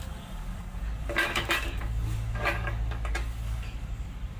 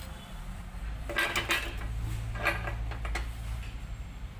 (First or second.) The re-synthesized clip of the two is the first